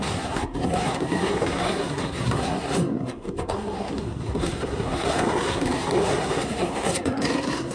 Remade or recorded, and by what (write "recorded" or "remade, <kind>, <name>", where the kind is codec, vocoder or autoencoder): remade, codec, SNAC